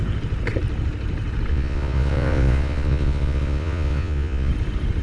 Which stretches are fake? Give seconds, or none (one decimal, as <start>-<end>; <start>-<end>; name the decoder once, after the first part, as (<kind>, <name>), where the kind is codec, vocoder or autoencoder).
1.5-4.5 (vocoder, Vocos)